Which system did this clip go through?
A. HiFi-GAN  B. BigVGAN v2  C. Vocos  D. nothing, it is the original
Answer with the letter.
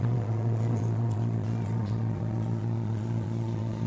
C